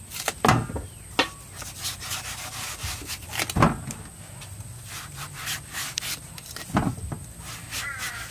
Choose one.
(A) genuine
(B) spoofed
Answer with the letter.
A